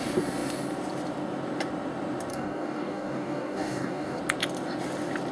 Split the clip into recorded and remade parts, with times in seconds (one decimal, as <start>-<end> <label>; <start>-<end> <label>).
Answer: 0.0-2.3 recorded; 2.3-4.2 remade; 4.2-5.3 recorded